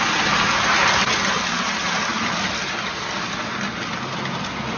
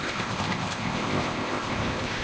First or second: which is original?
first